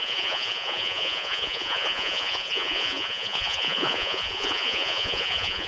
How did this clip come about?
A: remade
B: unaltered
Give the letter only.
A